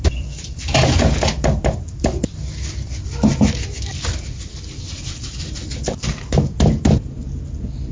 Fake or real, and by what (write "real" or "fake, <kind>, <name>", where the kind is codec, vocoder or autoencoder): real